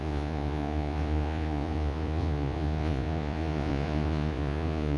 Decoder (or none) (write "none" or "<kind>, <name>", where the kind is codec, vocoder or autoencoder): vocoder, Vocos